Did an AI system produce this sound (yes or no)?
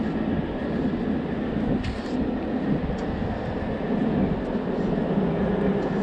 no